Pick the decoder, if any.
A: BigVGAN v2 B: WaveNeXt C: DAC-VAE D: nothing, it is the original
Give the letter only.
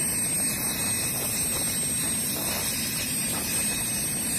D